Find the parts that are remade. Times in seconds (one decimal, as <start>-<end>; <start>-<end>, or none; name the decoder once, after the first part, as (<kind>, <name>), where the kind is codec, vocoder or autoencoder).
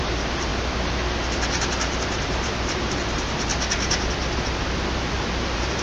0.0-0.5 (vocoder, BigVGAN v2); 1.6-3.5; 4.9-5.8